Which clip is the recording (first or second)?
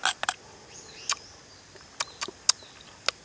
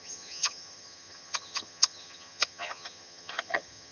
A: first